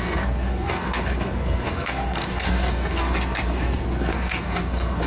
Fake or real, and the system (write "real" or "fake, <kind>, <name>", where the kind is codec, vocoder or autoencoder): fake, codec, SNAC